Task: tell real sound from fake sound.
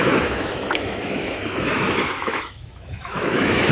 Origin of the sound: fake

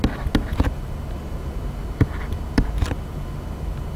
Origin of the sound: real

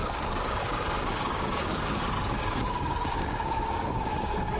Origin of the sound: fake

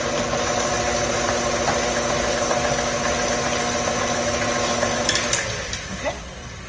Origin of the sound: real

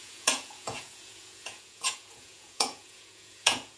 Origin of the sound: fake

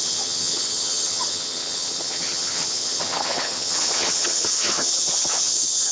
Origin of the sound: fake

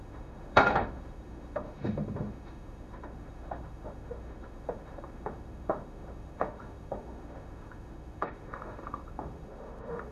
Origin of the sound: fake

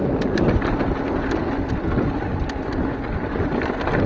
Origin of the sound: real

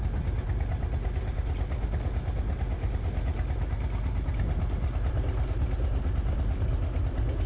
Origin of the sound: real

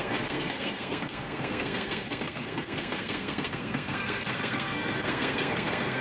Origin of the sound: fake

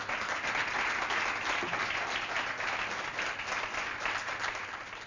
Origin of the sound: real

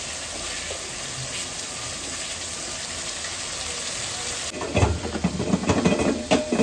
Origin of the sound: real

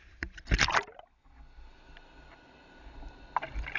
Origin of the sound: real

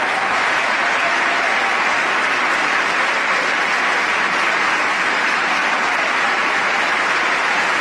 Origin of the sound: real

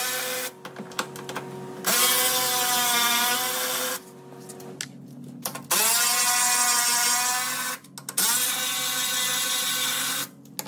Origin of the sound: real